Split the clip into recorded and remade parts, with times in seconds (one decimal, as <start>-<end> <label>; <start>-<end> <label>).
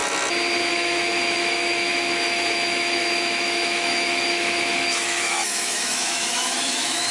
0.0-0.7 recorded; 0.7-7.1 remade